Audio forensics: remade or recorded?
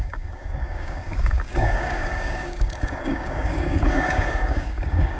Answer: remade